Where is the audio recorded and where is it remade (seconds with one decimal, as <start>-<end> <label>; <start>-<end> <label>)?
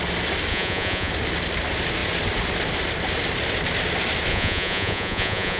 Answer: 0.0-0.5 recorded; 0.5-1.1 remade; 1.1-4.3 recorded; 4.3-5.6 remade